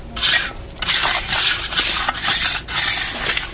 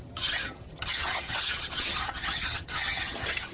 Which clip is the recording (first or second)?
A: first